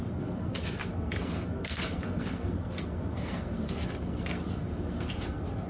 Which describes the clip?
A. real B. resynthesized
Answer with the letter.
B